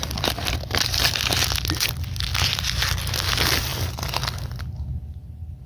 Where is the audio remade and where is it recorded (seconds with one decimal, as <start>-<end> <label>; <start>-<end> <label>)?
0.0-5.7 recorded